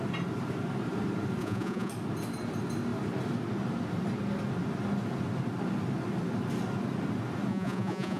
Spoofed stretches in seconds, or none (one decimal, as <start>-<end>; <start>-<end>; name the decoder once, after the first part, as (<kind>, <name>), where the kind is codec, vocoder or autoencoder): 1.4-1.9 (vocoder, Vocos); 7.5-8.2